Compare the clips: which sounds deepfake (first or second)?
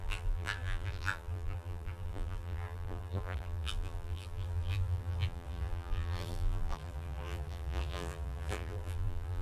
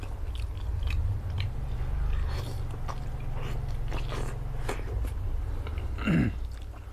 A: first